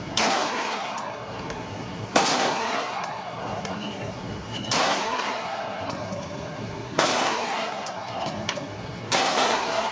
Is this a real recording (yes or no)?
no